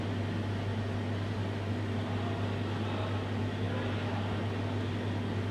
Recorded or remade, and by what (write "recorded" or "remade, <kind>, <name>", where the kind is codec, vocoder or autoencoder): recorded